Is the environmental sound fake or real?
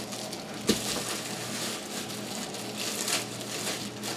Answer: real